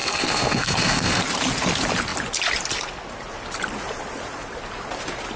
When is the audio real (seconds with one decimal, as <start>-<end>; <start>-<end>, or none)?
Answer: 1.2-5.4